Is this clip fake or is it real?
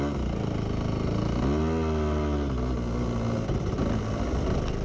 real